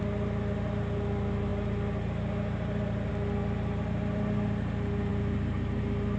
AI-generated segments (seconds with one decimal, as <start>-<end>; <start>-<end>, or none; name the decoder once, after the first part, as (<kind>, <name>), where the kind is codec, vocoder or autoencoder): none